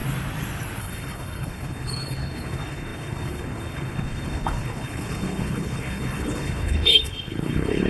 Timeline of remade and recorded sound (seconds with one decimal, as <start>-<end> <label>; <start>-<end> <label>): 0.0-0.8 recorded; 0.8-7.9 remade